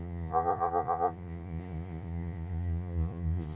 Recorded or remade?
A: remade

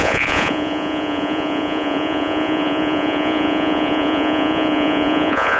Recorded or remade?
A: remade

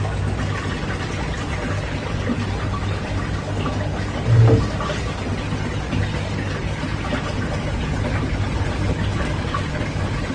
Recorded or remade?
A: recorded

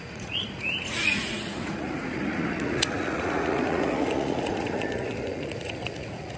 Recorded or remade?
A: remade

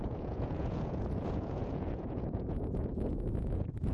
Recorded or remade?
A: remade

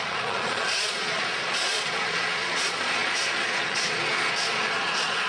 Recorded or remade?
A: remade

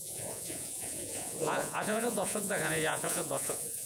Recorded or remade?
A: remade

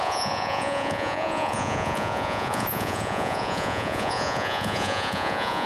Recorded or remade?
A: remade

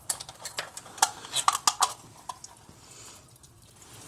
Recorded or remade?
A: recorded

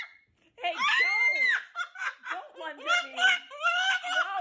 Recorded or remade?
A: recorded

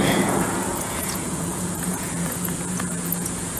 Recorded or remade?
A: remade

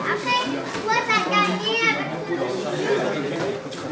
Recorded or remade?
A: recorded